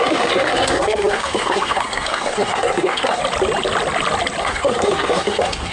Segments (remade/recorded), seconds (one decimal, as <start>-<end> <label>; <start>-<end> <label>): 0.0-3.2 remade; 3.2-4.4 recorded; 4.4-5.7 remade